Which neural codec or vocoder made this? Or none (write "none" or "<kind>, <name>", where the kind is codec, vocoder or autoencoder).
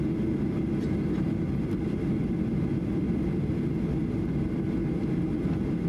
none